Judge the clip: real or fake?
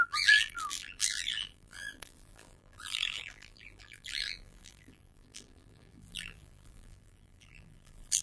fake